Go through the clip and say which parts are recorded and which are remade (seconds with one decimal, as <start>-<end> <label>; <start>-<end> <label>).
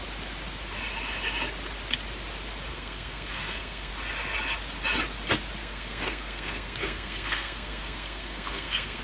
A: 0.0-2.7 recorded; 2.7-3.9 remade; 3.9-5.6 recorded; 5.6-9.0 remade